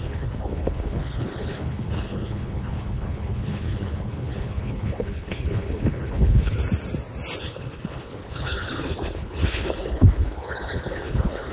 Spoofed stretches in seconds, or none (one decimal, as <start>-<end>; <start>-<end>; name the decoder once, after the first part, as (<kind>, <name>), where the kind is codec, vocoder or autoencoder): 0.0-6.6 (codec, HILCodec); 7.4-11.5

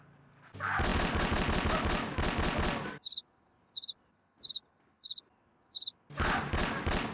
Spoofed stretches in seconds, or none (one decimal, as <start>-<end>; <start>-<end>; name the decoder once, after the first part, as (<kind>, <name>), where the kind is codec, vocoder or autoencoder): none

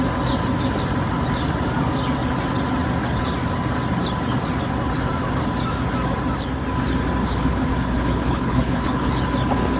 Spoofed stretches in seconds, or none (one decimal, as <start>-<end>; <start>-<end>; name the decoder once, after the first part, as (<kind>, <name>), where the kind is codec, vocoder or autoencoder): 7.2-9.2 (codec, HILCodec)

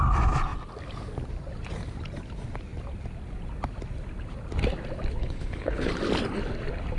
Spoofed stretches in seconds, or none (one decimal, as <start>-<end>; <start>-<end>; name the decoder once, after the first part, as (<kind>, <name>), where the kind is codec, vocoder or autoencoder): 5.2-5.9 (codec, HILCodec)

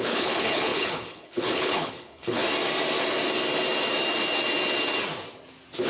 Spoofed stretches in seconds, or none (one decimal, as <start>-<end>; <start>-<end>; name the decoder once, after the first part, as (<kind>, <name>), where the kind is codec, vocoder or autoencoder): 0.0-2.4 (codec, HILCodec)

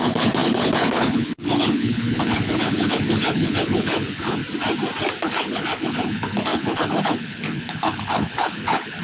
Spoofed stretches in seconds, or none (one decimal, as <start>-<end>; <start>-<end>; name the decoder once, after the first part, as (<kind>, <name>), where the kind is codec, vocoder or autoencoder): 0.0-4.4 (codec, HILCodec); 5.2-9.0